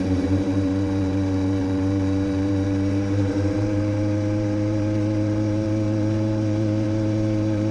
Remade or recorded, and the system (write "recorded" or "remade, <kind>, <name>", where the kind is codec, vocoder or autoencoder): remade, vocoder, BigVGAN v2